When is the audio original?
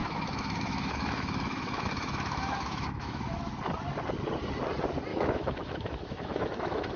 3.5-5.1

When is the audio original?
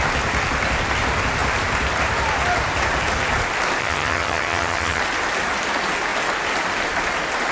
0.0-3.8; 5.0-7.5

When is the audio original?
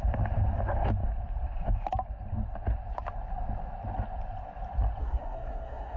0.0-5.0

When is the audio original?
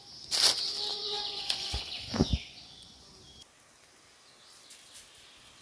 0.0-0.9; 3.1-5.6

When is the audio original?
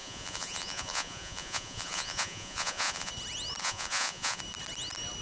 3.1-3.6; 4.4-5.2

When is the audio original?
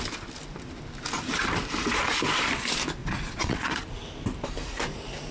0.0-3.0; 3.8-5.3